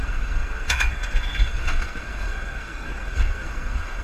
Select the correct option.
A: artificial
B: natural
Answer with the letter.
A